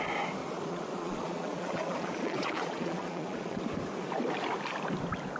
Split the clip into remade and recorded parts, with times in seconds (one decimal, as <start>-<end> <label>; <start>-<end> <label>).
0.0-0.4 recorded; 0.4-3.6 remade; 3.6-5.4 recorded